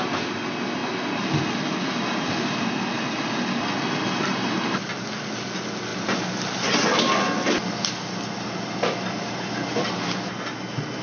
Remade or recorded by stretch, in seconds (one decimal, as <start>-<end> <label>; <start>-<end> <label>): 0.0-11.0 recorded